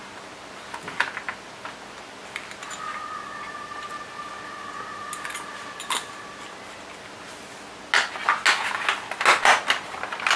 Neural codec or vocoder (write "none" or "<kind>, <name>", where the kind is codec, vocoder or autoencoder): none